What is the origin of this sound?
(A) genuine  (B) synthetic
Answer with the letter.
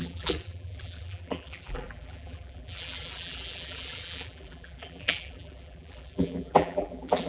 B